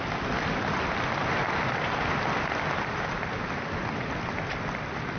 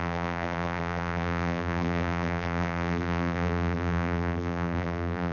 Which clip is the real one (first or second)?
first